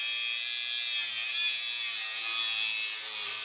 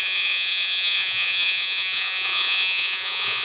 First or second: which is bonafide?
first